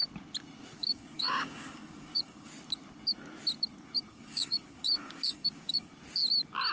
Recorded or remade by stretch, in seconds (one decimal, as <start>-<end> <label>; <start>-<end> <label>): 0.0-0.8 recorded; 0.8-2.5 remade; 2.5-4.1 recorded; 4.1-5.9 remade; 5.9-6.7 recorded